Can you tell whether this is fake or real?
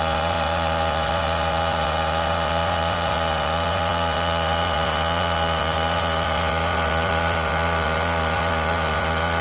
fake